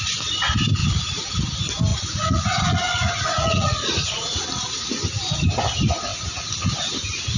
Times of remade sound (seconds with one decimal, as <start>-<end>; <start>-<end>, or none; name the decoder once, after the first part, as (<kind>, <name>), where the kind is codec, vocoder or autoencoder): 0.8-1.4 (vocoder, Vocos); 1.9-4.9